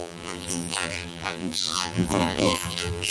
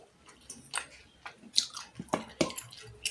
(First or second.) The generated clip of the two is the first